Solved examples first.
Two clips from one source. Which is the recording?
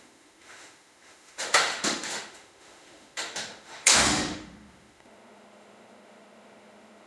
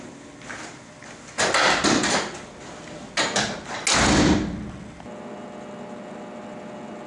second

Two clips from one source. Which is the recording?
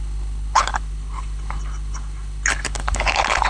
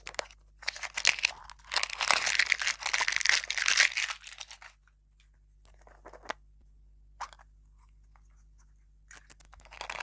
second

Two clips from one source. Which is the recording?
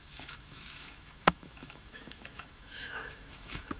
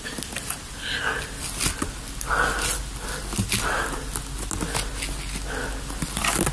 second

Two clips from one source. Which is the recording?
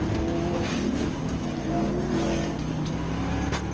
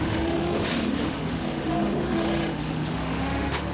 first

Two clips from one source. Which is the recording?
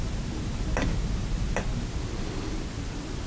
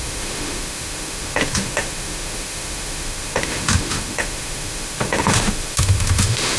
first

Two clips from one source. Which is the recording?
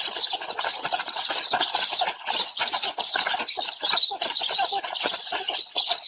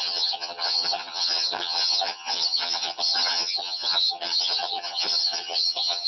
first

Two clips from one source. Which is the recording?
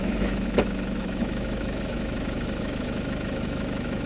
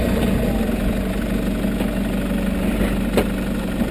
second